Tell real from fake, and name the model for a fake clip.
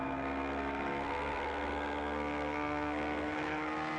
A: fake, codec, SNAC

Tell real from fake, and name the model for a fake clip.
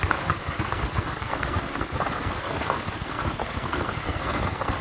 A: fake, codec, SNAC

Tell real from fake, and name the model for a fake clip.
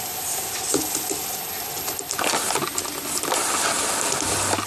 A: real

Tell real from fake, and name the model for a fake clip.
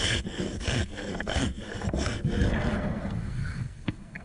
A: fake, codec, SNAC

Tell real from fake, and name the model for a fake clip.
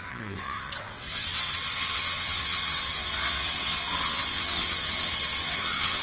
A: fake, vocoder, WaveNeXt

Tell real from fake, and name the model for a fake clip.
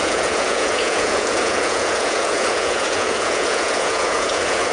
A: fake, vocoder, Vocos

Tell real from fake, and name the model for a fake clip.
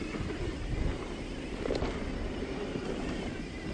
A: real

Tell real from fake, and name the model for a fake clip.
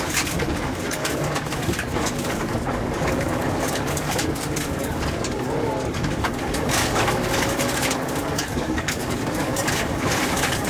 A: fake, codec, DAC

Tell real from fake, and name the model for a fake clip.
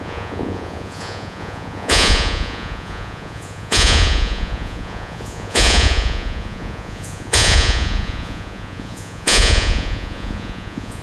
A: fake, vocoder, Vocos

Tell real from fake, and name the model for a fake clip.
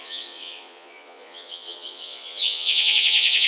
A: fake, vocoder, Vocos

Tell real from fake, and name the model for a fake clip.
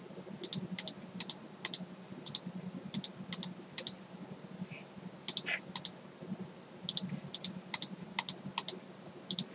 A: real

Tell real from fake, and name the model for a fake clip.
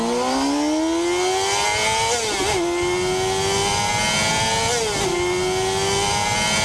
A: real